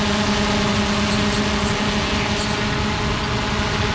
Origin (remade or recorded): recorded